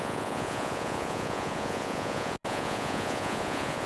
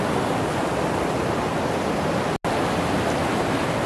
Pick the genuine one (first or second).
second